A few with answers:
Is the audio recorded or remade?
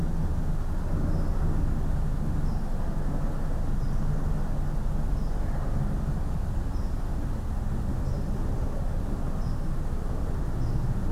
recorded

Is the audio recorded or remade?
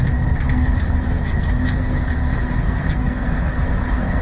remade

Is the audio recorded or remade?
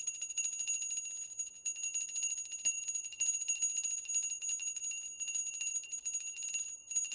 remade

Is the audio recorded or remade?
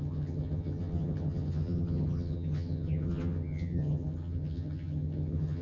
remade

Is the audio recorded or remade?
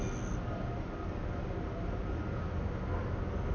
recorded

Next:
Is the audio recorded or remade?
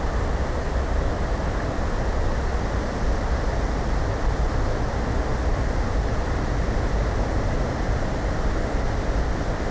remade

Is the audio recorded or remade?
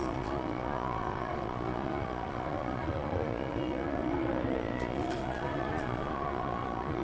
remade